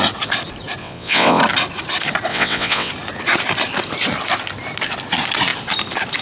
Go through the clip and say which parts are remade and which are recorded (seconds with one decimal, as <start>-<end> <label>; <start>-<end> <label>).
0.0-0.8 recorded; 0.8-1.4 remade; 1.4-2.3 recorded; 2.3-2.9 remade; 2.9-6.2 recorded